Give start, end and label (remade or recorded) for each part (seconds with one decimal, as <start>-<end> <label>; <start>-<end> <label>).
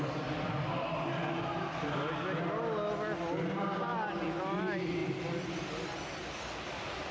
0.0-7.1 recorded